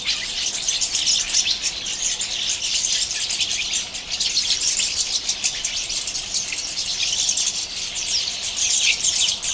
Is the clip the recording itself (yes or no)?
yes